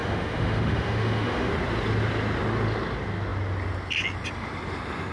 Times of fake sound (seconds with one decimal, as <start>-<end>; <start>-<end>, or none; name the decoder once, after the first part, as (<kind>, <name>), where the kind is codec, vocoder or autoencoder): 0.0-1.5 (autoencoder, DAC-VAE)